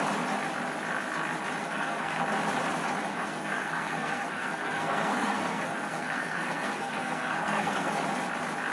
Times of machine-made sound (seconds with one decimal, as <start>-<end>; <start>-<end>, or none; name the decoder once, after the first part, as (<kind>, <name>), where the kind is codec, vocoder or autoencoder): 1.6-2.2 (codec, SNAC); 3.1-7.9

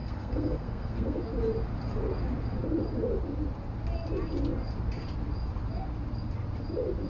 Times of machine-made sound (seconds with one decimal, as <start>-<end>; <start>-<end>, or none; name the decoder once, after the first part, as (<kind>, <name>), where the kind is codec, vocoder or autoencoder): 0.0-1.2 (codec, SNAC)

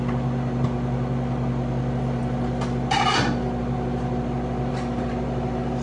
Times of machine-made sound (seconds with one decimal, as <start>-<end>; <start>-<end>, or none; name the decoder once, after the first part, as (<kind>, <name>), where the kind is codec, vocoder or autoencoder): none